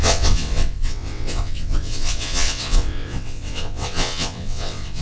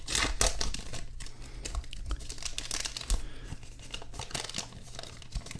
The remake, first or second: first